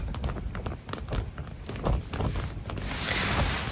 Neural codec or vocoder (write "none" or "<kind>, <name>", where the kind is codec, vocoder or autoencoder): none